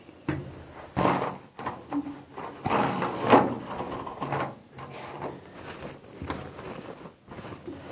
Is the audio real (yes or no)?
yes